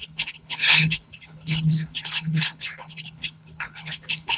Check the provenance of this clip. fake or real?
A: fake